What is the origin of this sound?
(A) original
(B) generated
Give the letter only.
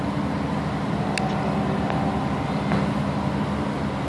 A